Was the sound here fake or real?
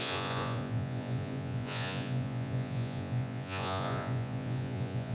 fake